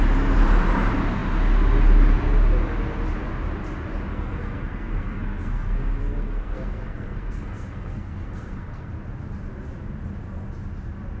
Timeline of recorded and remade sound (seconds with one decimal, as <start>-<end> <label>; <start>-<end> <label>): 0.0-4.1 recorded; 4.1-8.9 remade; 8.9-11.2 recorded